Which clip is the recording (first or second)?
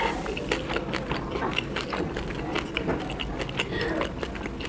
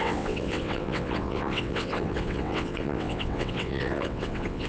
first